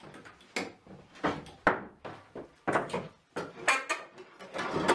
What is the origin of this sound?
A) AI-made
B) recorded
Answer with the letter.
B